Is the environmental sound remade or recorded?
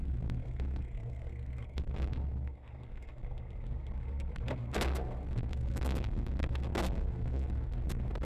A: remade